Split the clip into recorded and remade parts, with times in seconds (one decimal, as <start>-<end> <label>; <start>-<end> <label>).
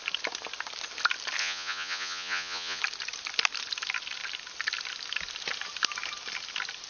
0.0-1.4 recorded; 1.4-2.8 remade; 2.8-6.9 recorded